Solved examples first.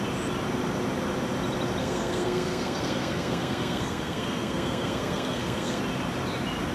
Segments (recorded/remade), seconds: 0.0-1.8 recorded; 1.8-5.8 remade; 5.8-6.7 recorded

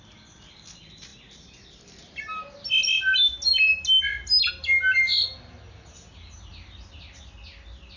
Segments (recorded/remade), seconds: 0.0-8.0 recorded

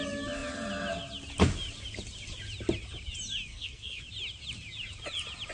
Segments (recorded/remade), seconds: 0.0-3.5 recorded; 3.5-4.0 remade; 4.0-5.5 recorded

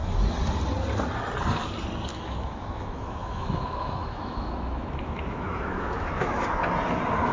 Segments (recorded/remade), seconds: 0.0-2.1 recorded; 2.1-6.5 remade; 6.5-7.3 recorded

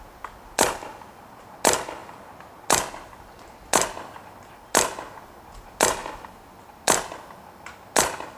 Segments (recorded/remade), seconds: 0.0-8.4 recorded

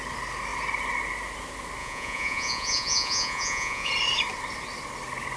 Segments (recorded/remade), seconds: 0.0-1.8 recorded; 1.8-3.9 remade; 3.9-5.4 recorded

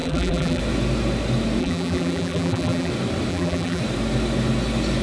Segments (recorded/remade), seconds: 0.0-0.6 remade; 0.6-1.6 recorded; 1.6-2.9 remade; 2.9-3.3 recorded; 3.3-3.8 remade; 3.8-5.0 recorded

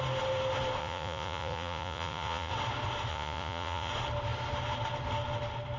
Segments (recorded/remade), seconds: 0.0-0.8 recorded; 0.8-2.5 remade; 2.5-3.1 recorded; 3.1-3.9 remade; 3.9-5.8 recorded